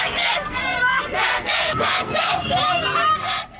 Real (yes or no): no